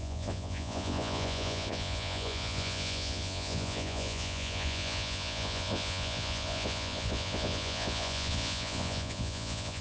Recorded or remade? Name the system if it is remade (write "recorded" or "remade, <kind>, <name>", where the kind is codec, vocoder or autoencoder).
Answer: remade, vocoder, Vocos